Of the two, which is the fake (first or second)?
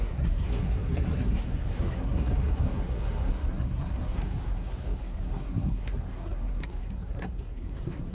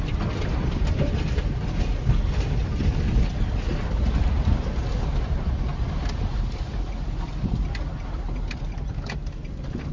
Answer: first